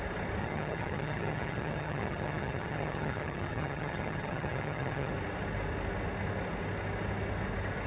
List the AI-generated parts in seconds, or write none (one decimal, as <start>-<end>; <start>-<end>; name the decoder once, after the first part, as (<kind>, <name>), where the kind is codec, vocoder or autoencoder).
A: 0.4-5.1 (vocoder, HiFi-GAN)